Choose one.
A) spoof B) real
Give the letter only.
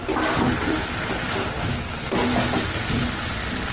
B